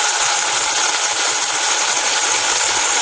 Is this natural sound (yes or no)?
yes